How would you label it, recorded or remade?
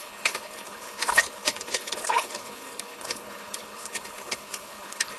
remade